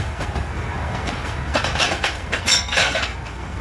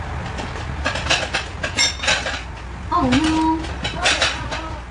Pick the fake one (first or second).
first